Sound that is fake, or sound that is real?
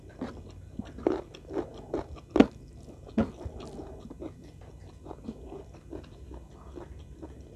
real